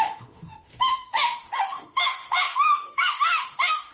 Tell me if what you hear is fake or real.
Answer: fake